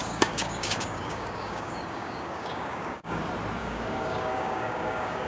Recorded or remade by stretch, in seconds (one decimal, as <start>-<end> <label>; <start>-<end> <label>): 0.0-3.2 remade; 3.2-3.6 recorded; 3.6-5.3 remade